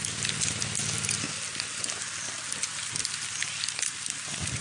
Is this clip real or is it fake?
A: real